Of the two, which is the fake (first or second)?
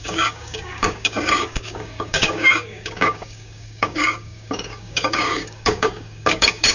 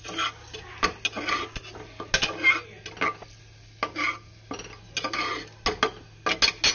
first